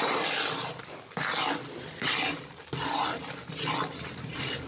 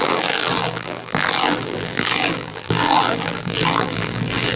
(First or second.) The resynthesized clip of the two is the second